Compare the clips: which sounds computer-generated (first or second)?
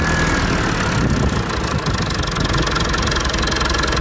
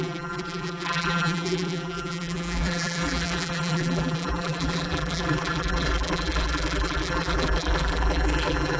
second